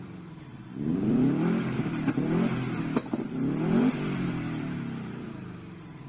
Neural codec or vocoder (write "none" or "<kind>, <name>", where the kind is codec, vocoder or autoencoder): vocoder, BigVGAN v2